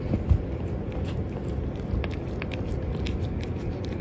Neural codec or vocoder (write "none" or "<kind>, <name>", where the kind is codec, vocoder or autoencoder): none